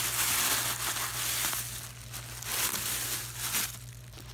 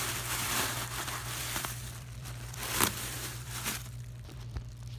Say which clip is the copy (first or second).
second